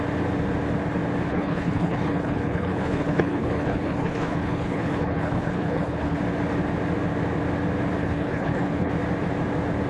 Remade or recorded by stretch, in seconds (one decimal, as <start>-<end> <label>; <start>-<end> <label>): 0.0-1.3 recorded; 1.3-6.2 remade; 6.2-8.0 recorded; 8.0-8.9 remade; 8.9-9.9 recorded